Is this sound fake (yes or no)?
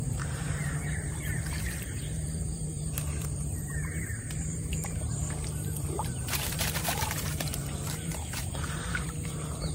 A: yes